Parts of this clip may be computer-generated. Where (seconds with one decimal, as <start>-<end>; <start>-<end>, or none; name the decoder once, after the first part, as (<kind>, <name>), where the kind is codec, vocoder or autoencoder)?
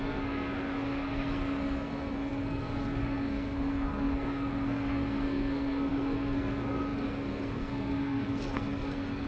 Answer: 0.0-9.3 (codec, SNAC)